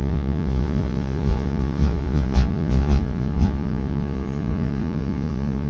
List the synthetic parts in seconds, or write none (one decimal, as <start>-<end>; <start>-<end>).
0.0-5.7

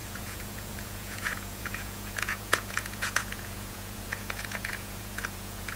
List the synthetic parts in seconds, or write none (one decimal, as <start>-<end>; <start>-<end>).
0.0-5.8

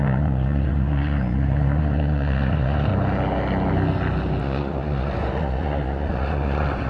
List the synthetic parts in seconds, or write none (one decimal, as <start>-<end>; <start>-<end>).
0.0-2.9; 4.4-6.9